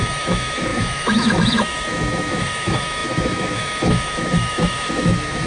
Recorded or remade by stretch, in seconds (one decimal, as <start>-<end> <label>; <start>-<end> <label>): 0.0-5.5 remade